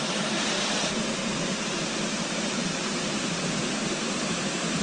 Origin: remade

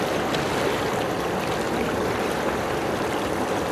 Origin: remade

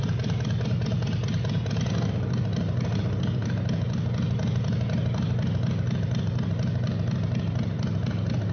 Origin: recorded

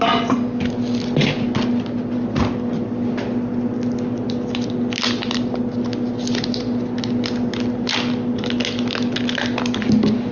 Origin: recorded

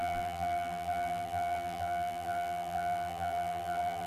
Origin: remade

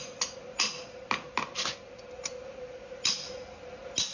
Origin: recorded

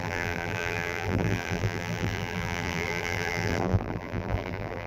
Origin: remade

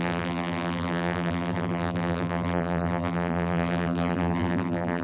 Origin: remade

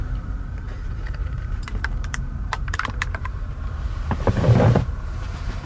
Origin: remade